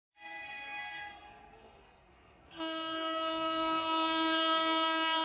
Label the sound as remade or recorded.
remade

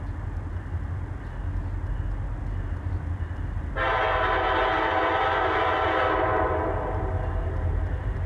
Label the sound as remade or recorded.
recorded